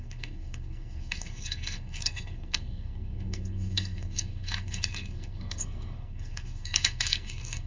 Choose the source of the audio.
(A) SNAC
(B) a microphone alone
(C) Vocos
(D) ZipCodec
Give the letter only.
A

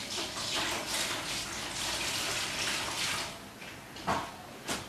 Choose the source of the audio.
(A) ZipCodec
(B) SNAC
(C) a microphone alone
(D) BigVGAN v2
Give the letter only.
C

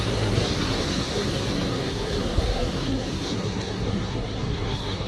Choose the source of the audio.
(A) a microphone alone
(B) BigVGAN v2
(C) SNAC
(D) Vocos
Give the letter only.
C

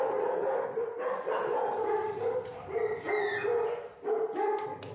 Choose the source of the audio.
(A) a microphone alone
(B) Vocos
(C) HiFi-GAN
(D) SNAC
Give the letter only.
A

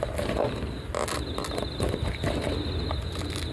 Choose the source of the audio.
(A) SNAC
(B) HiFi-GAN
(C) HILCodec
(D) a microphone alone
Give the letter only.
D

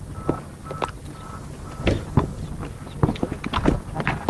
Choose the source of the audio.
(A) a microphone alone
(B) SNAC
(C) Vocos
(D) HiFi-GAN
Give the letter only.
A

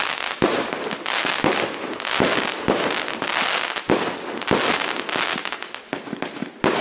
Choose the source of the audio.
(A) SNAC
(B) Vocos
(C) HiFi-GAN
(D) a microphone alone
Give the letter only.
D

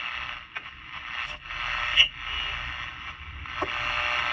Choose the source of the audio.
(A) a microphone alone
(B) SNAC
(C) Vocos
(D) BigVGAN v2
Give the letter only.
A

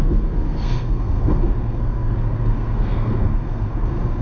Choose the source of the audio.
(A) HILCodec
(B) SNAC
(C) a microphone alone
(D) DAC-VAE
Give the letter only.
B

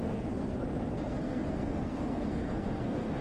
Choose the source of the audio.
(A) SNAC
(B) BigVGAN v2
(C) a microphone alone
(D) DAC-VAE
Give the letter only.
A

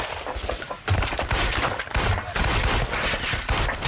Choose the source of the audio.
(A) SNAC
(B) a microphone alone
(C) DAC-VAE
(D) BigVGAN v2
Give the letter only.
B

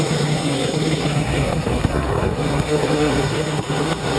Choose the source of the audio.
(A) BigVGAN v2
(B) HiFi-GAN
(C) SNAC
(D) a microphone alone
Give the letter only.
C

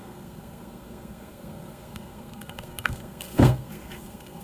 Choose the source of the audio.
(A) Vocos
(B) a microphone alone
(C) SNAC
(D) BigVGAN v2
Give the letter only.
C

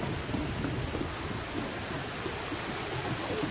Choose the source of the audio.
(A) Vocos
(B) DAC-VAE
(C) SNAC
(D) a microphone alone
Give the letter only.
D